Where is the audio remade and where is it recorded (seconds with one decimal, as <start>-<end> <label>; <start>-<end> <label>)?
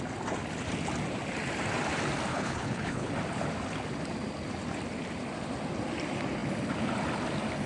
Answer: 0.0-2.3 recorded; 2.3-3.1 remade; 3.1-7.7 recorded